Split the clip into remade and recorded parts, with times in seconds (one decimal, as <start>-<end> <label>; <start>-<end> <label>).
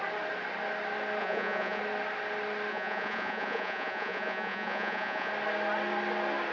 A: 0.0-1.2 recorded; 1.2-1.8 remade; 1.8-2.7 recorded; 2.7-5.3 remade; 5.3-6.5 recorded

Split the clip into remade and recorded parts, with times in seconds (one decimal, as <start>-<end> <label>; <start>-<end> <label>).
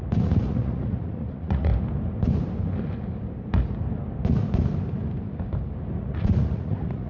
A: 0.0-1.7 remade; 1.7-6.0 recorded; 6.0-7.1 remade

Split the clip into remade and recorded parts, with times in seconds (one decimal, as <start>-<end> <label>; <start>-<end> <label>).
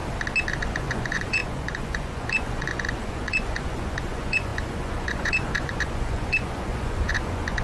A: 0.0-0.5 recorded; 0.5-7.6 remade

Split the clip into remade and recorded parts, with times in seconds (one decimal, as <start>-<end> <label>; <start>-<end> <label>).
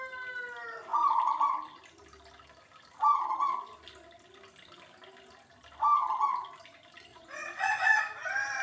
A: 0.0-7.1 recorded; 7.1-8.0 remade; 8.0-8.6 recorded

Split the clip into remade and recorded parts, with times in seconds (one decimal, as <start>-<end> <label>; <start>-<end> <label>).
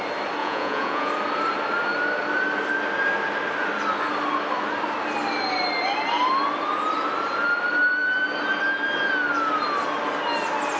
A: 0.0-0.4 recorded; 0.4-1.1 remade; 1.1-10.8 recorded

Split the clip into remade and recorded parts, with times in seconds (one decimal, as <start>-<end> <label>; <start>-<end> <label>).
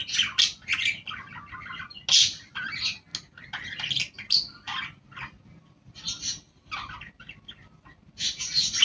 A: 0.0-8.8 recorded